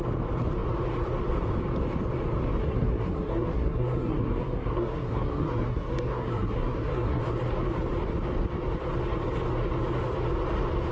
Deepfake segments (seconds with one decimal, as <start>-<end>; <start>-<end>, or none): 2.6-7.2

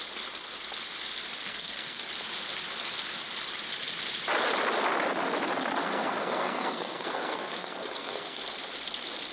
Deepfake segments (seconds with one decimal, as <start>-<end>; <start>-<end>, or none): 1.4-2.1; 5.8-8.4

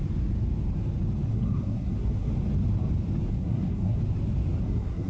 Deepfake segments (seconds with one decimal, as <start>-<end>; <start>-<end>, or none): 1.3-2.3; 3.3-4.0; 4.6-5.1

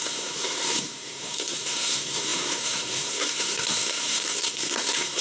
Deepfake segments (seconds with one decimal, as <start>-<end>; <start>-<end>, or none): 0.0-5.2

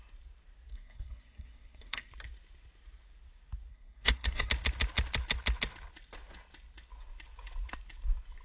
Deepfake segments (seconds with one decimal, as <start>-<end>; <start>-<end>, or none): 0.7-2.1; 3.7-4.5